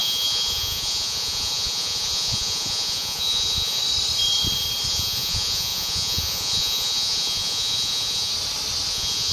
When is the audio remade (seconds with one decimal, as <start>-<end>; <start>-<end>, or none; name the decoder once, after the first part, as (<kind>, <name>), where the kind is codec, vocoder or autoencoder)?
0.0-3.8 (vocoder, Vocos); 4.9-8.3; 8.9-9.3